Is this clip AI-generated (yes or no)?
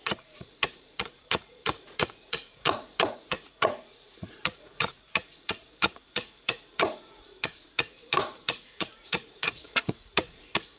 yes